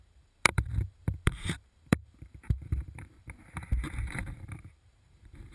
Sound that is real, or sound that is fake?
fake